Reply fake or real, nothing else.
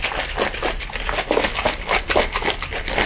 real